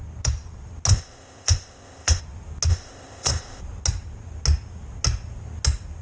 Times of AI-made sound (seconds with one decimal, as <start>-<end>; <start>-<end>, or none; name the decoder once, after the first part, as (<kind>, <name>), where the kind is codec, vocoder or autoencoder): 0.9-2.2 (codec, ZipCodec); 2.7-3.6